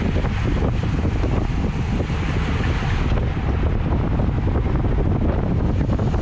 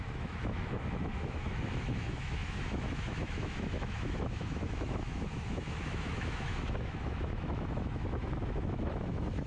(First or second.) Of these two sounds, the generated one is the second